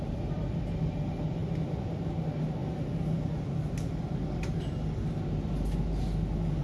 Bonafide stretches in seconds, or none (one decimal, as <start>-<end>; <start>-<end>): 0.0-6.6